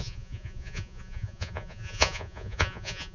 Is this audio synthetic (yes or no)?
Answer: yes